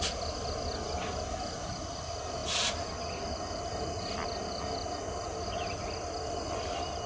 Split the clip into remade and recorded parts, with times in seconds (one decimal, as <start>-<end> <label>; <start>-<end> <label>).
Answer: 0.0-7.1 recorded